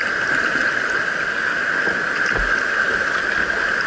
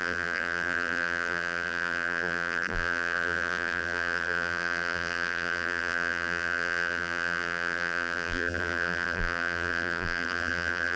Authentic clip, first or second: first